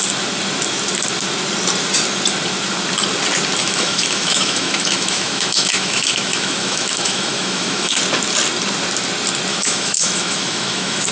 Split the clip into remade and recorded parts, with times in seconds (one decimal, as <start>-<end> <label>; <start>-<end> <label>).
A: 0.0-3.6 recorded; 3.6-8.0 remade; 8.0-9.5 recorded; 9.5-11.1 remade

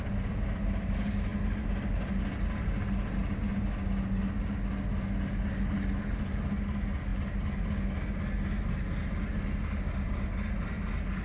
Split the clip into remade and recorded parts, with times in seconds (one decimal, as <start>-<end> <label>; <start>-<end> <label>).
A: 0.0-11.2 recorded

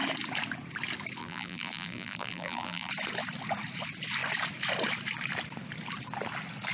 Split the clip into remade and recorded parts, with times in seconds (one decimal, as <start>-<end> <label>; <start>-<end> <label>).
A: 0.0-1.2 recorded; 1.2-2.9 remade; 2.9-6.7 recorded